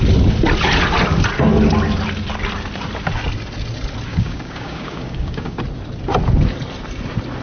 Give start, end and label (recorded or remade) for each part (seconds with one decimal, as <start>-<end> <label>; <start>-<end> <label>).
0.0-4.1 recorded; 4.1-5.6 remade; 5.6-7.4 recorded